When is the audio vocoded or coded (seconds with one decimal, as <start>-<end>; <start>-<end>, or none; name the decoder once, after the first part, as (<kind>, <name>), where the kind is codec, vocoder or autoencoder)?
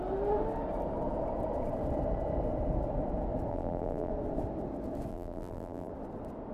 3.5-4.1 (vocoder, BigVGAN v2); 5.1-5.9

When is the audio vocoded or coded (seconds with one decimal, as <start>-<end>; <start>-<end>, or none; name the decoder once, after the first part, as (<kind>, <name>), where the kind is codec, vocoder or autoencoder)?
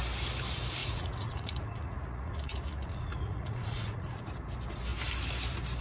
0.8-4.3 (vocoder, Vocos)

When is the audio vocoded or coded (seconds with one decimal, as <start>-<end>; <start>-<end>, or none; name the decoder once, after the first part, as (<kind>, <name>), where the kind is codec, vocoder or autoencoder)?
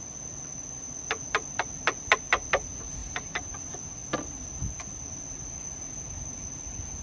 3.0-3.5 (vocoder, BigVGAN v2)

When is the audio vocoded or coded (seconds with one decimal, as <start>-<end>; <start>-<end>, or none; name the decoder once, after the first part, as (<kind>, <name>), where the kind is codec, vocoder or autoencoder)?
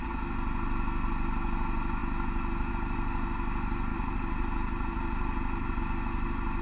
3.9-5.8 (vocoder, BigVGAN v2)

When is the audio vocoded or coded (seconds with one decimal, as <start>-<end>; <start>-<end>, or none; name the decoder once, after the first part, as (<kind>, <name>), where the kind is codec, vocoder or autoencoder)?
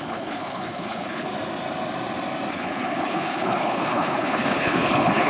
0.0-1.3 (codec, HILCodec); 2.5-5.3